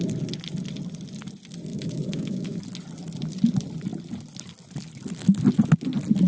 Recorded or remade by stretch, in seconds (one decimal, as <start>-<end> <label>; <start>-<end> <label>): 0.0-1.7 recorded; 1.7-2.6 remade; 2.6-6.3 recorded